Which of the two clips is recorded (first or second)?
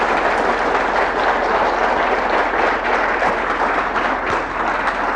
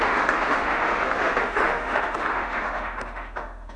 first